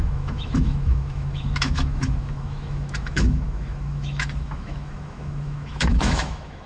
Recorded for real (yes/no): no